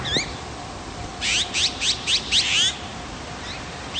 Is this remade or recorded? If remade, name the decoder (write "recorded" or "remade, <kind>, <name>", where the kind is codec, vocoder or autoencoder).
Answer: recorded